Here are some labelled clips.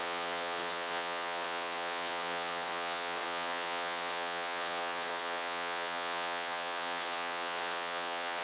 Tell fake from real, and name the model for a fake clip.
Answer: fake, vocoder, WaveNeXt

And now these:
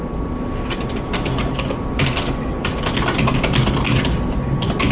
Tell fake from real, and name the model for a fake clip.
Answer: real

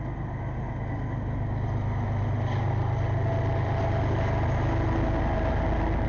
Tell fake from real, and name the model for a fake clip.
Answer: real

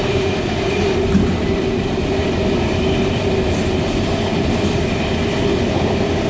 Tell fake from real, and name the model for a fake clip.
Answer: real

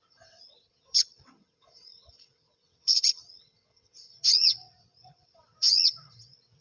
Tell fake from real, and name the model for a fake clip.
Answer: fake, vocoder, WaveNeXt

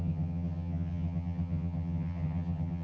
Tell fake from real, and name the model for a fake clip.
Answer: fake, vocoder, HiFi-GAN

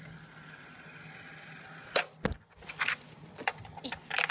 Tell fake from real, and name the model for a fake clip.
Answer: real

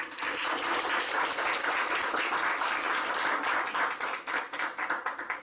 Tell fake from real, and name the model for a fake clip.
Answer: real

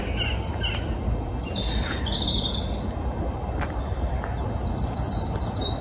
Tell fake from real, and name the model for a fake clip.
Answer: real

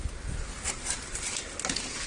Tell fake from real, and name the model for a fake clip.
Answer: real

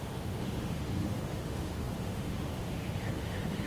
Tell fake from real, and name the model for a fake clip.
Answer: fake, autoencoder, DAC-VAE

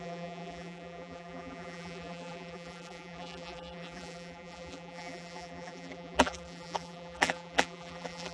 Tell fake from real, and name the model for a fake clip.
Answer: fake, vocoder, BigVGAN v2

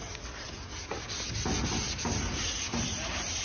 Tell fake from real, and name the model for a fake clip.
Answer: real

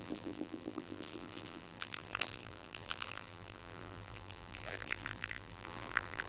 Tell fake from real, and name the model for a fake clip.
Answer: fake, vocoder, BigVGAN v2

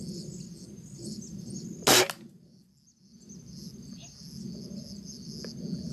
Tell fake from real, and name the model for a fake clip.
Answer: real